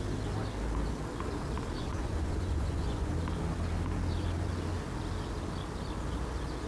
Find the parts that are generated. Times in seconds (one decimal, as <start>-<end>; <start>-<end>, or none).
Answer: 1.8-3.1